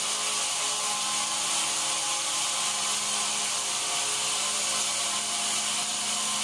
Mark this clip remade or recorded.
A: recorded